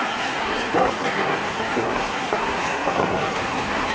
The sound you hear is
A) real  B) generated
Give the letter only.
B